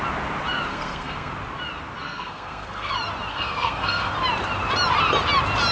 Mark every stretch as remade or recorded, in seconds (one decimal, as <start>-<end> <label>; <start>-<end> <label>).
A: 0.0-0.7 recorded; 0.7-1.3 remade; 1.3-2.0 recorded; 2.0-2.9 remade; 2.9-3.3 recorded; 3.3-4.1 remade; 4.1-5.7 recorded